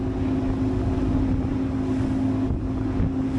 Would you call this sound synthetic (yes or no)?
no